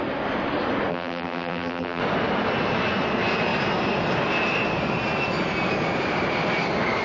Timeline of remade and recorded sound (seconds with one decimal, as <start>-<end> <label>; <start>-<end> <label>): 0.0-0.9 recorded; 0.9-2.0 remade; 2.0-7.0 recorded